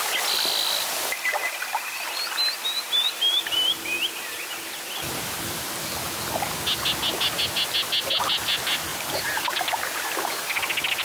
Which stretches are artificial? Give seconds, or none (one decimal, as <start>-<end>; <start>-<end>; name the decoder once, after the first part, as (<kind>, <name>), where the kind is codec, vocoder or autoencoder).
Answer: none